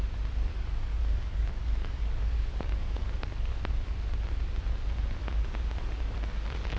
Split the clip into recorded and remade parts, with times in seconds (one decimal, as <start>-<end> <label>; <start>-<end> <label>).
0.0-0.5 recorded; 0.5-3.6 remade; 3.6-5.2 recorded; 5.2-6.8 remade